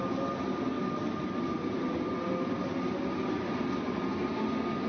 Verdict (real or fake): real